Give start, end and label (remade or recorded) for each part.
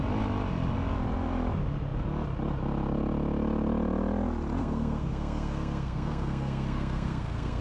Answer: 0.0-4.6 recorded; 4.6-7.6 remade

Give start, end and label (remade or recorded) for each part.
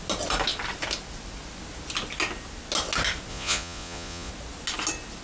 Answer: 0.0-3.3 recorded; 3.3-4.3 remade; 4.3-5.2 recorded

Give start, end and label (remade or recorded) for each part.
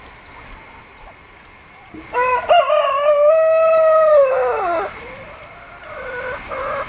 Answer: 0.0-6.9 recorded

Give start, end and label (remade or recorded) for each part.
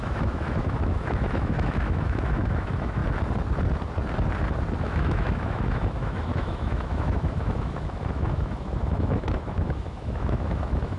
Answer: 0.0-3.0 remade; 3.0-4.8 recorded; 4.8-11.0 remade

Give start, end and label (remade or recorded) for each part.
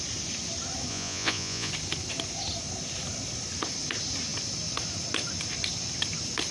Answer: 0.0-0.9 recorded; 0.9-1.7 remade; 1.7-6.5 recorded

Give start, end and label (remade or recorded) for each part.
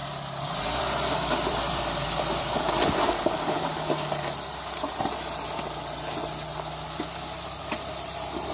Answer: 0.0-3.7 remade; 3.7-5.6 recorded; 5.6-6.2 remade; 6.2-7.6 recorded; 7.6-8.5 remade